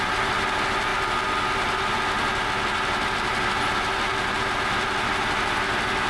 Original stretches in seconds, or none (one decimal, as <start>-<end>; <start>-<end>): 0.0-6.1